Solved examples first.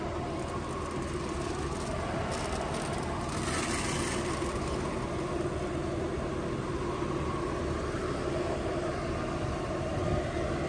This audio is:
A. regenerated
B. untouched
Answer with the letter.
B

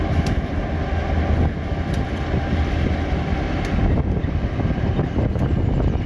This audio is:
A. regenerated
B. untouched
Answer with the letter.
B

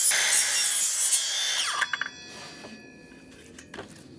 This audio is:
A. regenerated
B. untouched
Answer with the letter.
B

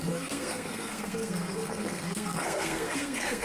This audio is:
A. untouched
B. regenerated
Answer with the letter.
B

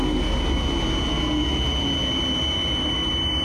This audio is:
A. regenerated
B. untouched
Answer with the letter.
B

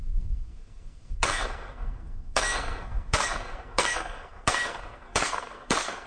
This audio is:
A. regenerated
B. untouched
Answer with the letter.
A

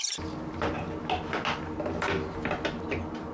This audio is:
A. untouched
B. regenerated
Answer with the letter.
A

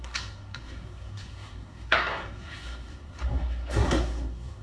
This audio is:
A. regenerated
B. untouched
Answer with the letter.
A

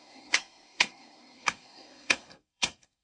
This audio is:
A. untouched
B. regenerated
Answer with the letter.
B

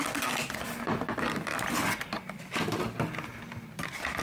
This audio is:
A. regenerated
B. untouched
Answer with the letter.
B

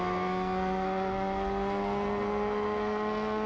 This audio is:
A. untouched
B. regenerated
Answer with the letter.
B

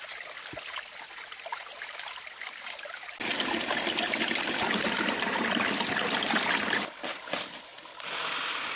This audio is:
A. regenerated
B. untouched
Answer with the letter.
B